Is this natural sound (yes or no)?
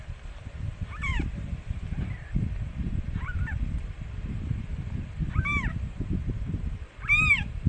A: yes